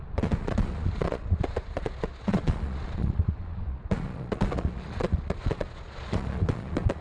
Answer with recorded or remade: remade